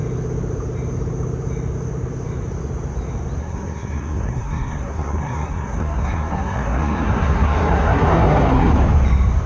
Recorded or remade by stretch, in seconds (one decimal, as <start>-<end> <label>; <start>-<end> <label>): 0.0-3.4 recorded; 3.4-8.7 remade; 8.7-9.5 recorded